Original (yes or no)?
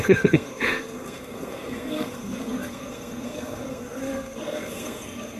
no